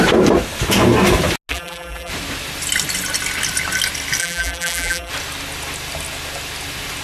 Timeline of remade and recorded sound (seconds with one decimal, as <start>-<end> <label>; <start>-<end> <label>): 0.0-1.5 recorded; 1.5-2.1 remade; 2.1-4.2 recorded; 4.2-5.1 remade; 5.1-7.0 recorded